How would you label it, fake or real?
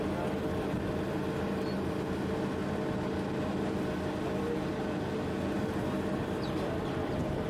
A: real